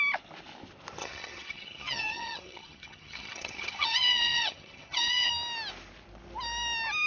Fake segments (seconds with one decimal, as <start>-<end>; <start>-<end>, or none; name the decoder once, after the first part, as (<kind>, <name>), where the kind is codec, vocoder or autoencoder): 1.0-5.3 (vocoder, HiFi-GAN)